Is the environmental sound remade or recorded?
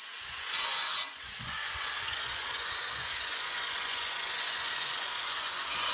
remade